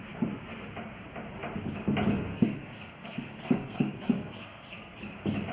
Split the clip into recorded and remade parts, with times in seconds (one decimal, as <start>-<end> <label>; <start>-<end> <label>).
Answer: 0.0-2.3 recorded; 2.3-5.0 remade; 5.0-5.5 recorded